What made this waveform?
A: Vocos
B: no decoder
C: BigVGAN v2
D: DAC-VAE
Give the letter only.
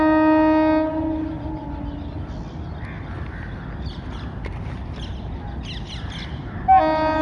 B